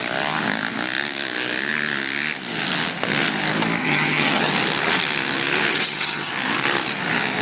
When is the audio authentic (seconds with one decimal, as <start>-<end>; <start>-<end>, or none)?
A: 0.0-3.8; 4.5-5.7; 6.3-7.4